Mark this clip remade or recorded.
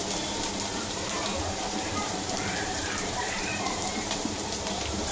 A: remade